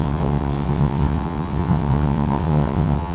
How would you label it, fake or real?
fake